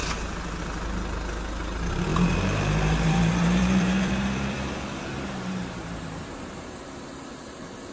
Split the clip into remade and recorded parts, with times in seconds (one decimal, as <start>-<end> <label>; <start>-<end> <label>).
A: 0.0-2.1 recorded; 2.1-6.8 remade; 6.8-7.9 recorded